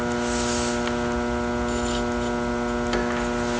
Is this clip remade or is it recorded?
recorded